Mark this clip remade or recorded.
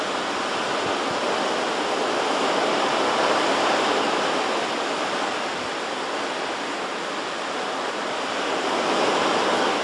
recorded